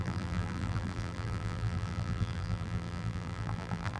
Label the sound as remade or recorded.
remade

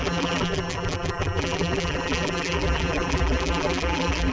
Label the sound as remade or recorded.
remade